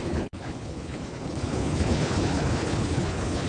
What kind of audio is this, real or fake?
fake